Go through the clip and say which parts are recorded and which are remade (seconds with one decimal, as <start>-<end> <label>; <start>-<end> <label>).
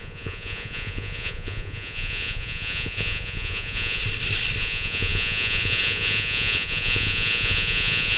0.0-4.0 remade; 4.0-4.6 recorded; 4.6-8.2 remade